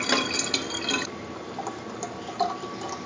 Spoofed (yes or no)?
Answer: no